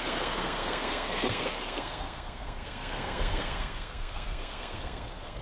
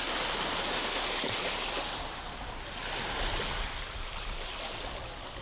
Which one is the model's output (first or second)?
first